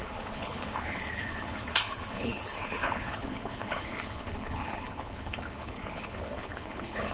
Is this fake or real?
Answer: fake